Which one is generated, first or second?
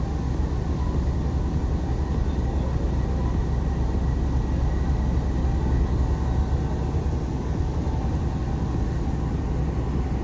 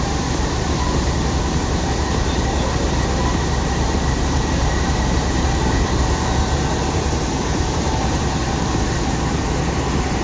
second